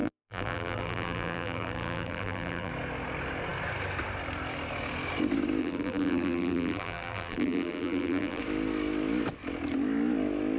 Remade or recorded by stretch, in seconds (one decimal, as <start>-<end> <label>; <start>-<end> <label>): 0.0-2.7 remade; 2.7-5.6 recorded; 5.6-8.4 remade; 8.4-10.6 recorded